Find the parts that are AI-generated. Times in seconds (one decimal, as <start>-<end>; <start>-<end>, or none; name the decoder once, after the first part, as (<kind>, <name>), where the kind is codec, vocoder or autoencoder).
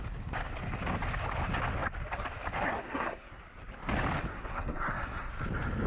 2.7-3.4 (codec, SNAC); 4.3-5.3